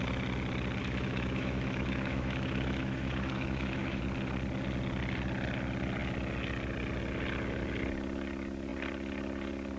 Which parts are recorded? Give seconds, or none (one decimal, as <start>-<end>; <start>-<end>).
0.0-0.8; 4.0-9.8